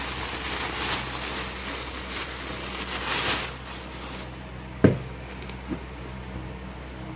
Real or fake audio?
real